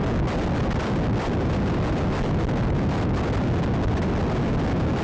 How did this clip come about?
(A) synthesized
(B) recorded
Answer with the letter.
B